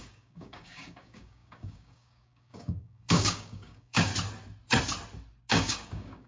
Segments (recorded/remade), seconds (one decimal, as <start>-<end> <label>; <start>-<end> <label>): 0.0-4.1 remade; 4.1-5.5 recorded; 5.5-6.3 remade